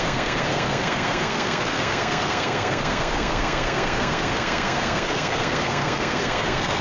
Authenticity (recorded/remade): remade